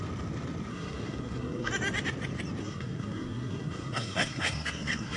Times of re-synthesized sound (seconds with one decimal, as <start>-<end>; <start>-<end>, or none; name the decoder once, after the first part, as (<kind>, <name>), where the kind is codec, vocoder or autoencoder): 0.7-1.7 (codec, SNAC); 2.6-5.2

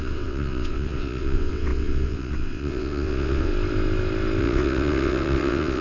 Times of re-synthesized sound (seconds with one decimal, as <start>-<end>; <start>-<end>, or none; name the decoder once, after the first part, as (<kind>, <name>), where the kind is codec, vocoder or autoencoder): 0.0-3.5 (vocoder, WaveNeXt); 4.4-5.8

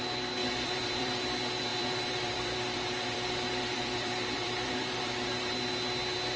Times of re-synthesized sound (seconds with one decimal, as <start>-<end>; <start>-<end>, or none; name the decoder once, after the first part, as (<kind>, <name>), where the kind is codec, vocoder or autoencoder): 0.4-1.2 (vocoder, BigVGAN v2); 1.7-5.5

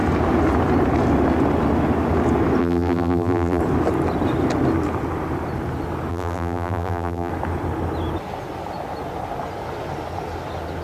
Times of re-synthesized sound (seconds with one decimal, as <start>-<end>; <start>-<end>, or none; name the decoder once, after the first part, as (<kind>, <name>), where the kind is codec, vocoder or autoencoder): 2.6-3.6 (vocoder, BigVGAN v2); 6.1-7.3

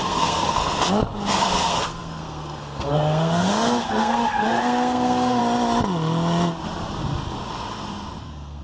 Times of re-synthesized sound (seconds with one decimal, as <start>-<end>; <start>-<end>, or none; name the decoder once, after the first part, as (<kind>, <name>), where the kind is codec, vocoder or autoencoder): 0.0-0.6 (codec, SNAC); 1.3-5.4; 8.2-8.6

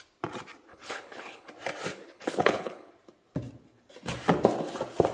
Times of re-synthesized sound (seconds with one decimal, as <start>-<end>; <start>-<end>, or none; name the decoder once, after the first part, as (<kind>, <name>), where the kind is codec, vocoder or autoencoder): 0.7-1.5 (codec, HILCodec); 1.9-2.9

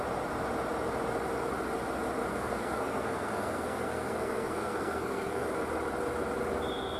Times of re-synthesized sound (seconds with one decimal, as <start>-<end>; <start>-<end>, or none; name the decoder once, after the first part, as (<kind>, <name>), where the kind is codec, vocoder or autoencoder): 2.3-5.5 (codec, SNAC)